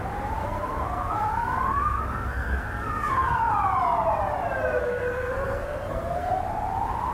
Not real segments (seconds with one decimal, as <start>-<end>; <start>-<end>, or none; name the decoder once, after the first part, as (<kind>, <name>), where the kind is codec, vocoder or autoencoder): 0.4-3.5 (codec, SNAC); 4.8-6.4